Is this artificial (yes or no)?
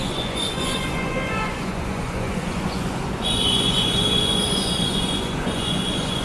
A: yes